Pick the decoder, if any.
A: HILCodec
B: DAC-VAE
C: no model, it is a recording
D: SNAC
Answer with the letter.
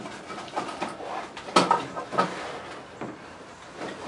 C